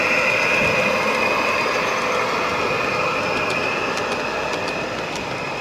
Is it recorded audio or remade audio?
recorded